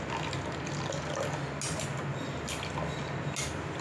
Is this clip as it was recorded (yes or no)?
yes